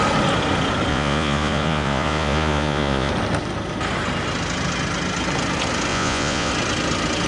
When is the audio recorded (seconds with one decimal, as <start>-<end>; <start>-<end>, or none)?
0.0-0.9; 3.1-5.9; 6.5-7.3

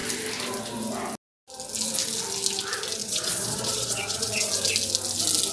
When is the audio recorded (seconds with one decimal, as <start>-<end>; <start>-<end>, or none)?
0.0-3.0; 4.5-5.5

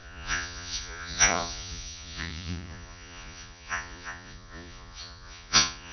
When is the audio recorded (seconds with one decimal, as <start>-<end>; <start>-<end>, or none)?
none